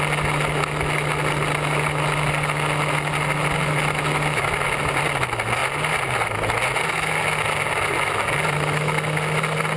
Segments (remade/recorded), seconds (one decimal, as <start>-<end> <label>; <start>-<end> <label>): 0.0-9.8 recorded